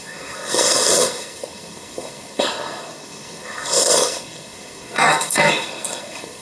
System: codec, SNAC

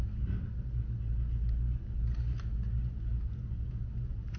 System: none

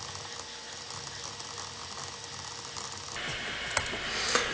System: none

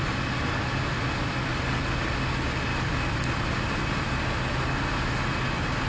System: none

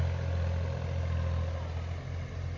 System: none